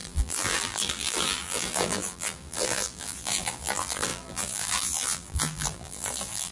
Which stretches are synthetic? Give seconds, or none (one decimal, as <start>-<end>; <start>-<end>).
0.0-6.5